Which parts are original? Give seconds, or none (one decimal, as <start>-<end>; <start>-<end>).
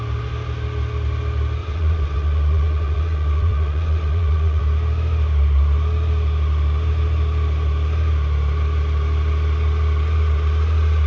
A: 0.0-1.6; 4.6-11.1